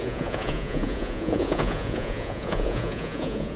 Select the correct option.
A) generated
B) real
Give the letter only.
A